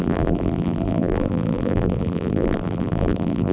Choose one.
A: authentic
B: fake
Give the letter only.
B